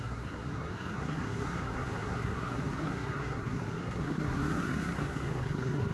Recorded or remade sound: remade